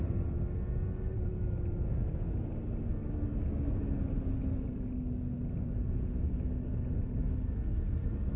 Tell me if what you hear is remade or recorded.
recorded